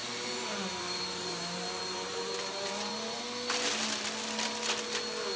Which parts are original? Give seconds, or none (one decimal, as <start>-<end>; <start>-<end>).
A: 3.2-5.4